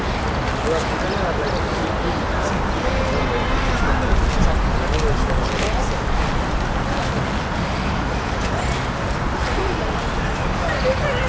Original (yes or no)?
yes